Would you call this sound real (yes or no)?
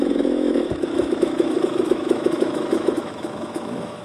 no